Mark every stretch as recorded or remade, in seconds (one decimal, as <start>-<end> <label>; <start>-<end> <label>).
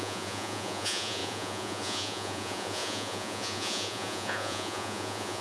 0.0-5.4 remade